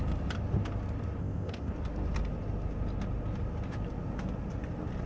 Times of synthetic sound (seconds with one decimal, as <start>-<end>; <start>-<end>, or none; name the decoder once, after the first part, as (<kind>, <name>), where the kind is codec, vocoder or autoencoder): 1.2-1.7 (codec, ZipCodec)